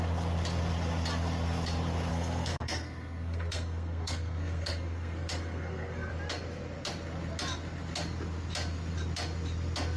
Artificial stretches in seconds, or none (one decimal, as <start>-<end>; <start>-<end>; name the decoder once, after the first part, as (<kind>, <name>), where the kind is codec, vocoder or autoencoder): 2.1-6.1 (codec, SNAC)